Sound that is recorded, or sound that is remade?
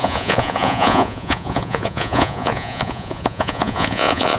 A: remade